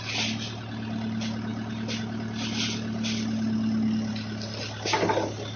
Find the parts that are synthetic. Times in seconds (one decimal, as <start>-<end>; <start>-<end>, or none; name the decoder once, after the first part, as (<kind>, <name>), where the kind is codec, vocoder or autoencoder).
none